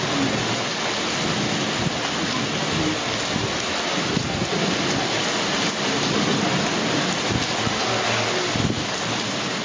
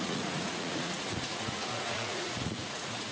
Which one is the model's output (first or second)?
second